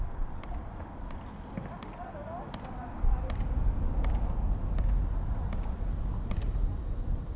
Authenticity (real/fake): real